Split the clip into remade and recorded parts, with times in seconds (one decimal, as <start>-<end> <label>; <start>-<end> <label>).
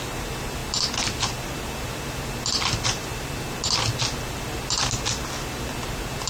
0.0-6.3 recorded